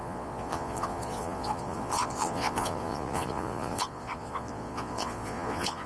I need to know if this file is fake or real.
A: fake